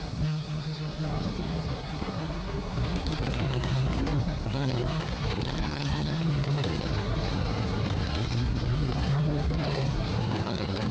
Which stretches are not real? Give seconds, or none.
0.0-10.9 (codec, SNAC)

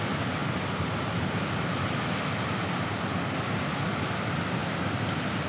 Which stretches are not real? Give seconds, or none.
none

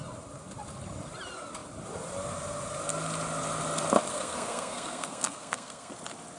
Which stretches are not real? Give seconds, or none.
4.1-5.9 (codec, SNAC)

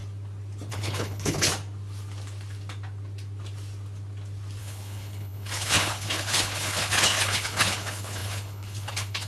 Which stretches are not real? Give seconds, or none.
0.7-1.5 (codec, HILCodec); 4.6-9.3

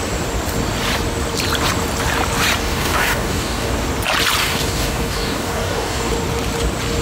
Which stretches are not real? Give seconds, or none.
2.6-3.7 (codec, DAC); 4.4-6.1

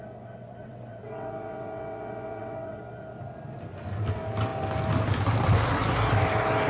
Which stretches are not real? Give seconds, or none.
0.6-2.8 (vocoder, WaveNeXt)